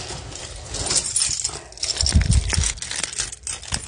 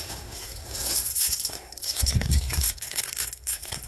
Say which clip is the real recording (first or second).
first